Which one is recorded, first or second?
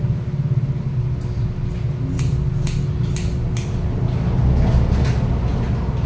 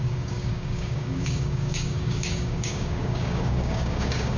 first